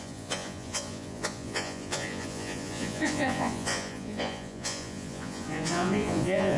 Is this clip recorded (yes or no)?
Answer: no